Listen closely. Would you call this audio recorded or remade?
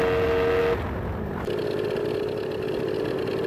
recorded